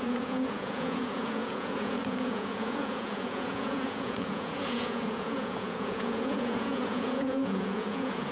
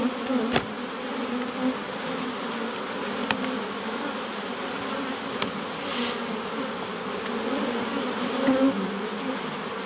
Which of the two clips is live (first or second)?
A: second